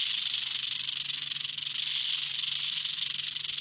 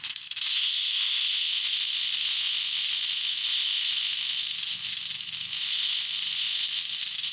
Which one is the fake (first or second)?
second